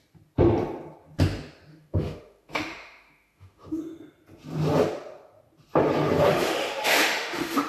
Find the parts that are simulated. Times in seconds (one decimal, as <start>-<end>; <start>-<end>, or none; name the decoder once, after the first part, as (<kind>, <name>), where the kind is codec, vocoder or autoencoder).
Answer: 1.7-3.8 (autoencoder, DAC-VAE); 6.3-7.7